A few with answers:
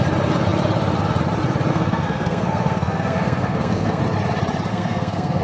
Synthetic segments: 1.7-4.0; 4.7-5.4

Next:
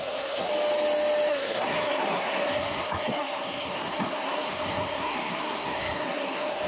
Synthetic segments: 0.0-0.5; 1.3-6.7